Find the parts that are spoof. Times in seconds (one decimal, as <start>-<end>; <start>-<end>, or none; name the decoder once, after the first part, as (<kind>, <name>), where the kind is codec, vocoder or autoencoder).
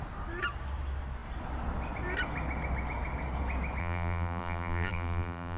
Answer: 3.8-5.6 (vocoder, BigVGAN v2)